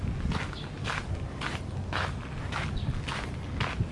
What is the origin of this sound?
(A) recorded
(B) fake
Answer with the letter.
A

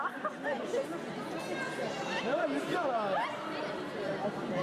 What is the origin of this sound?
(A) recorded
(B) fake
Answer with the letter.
A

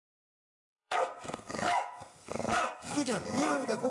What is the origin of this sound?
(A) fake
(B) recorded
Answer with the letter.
A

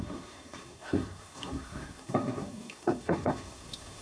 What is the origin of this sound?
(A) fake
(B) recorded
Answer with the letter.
A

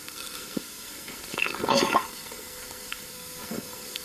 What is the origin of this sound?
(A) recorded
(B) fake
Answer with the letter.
B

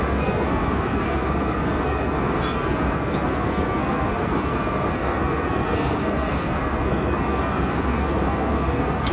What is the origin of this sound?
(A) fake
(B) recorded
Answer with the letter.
A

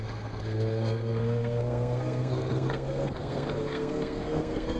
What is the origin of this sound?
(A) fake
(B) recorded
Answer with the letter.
A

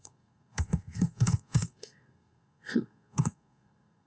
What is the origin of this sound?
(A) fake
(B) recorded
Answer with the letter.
A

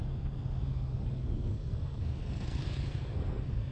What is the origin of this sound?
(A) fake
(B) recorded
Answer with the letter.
A